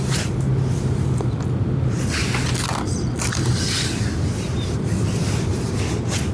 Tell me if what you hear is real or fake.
real